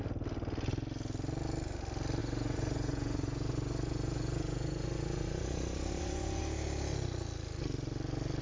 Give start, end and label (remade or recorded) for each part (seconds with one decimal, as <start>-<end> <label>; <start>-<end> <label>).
0.0-2.2 recorded; 2.2-6.4 remade; 6.4-8.4 recorded